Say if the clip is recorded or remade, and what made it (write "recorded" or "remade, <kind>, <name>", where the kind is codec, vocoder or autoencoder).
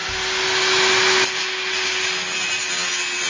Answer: recorded